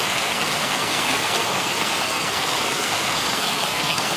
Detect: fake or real fake